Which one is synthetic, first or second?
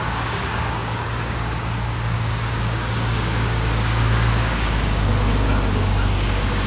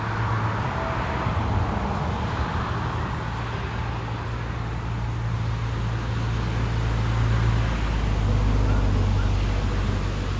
first